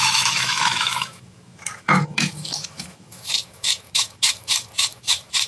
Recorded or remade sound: remade